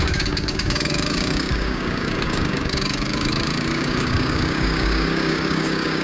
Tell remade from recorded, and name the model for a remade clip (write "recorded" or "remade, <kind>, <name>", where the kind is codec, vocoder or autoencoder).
remade, codec, DAC